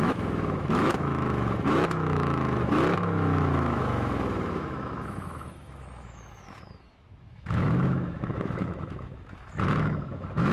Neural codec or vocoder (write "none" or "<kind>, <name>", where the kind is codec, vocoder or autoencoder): autoencoder, DAC-VAE